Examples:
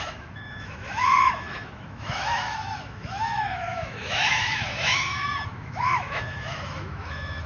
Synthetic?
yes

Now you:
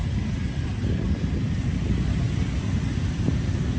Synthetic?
no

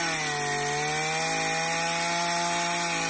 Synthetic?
no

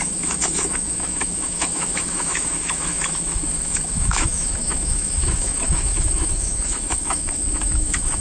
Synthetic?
yes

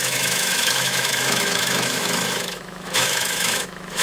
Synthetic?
yes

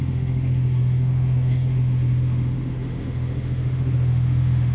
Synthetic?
yes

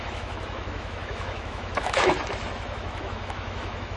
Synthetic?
yes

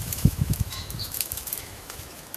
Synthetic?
yes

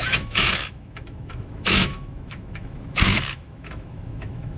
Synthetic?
yes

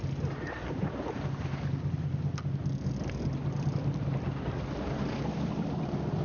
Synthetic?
no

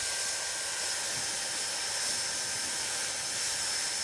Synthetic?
no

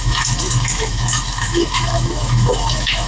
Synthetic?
yes